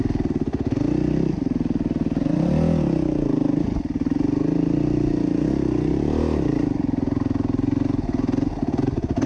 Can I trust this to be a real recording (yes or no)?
yes